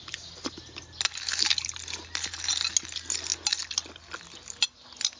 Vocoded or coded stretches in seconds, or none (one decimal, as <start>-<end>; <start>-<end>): none